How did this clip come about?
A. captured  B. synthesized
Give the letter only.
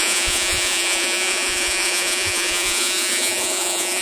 B